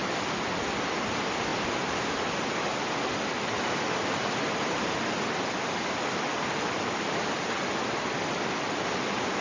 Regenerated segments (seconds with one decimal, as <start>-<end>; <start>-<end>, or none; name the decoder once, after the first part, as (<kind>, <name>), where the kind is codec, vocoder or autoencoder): 1.5-2.1 (vocoder, BigVGAN v2)